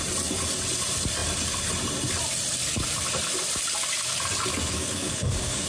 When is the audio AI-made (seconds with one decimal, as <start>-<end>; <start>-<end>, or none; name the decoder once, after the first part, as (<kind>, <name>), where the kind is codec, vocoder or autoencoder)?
4.5-5.7 (codec, DAC)